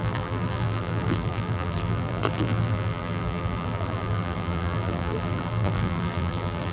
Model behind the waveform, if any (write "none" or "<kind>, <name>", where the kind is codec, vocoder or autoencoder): vocoder, BigVGAN v2